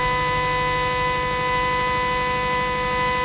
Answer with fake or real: real